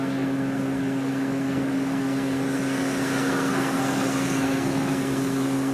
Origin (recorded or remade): remade